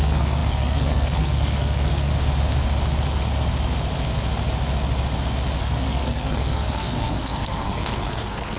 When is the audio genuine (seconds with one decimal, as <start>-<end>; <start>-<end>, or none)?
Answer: 2.1-5.6